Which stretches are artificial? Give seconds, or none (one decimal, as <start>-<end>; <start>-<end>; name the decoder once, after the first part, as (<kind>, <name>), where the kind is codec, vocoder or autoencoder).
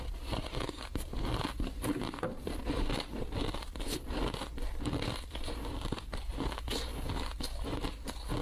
0.0-6.3 (vocoder, BigVGAN v2); 7.1-8.4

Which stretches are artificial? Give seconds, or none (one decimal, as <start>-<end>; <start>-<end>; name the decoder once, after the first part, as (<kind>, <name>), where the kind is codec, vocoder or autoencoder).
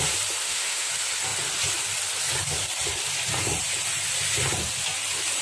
0.4-0.9 (autoencoder, DAC-VAE)